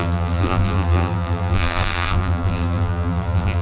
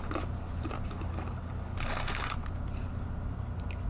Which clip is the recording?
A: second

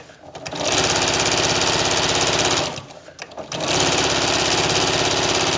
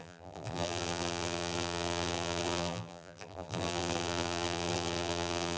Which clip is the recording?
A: first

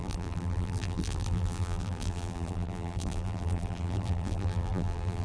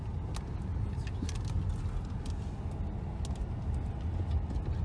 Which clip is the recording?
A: second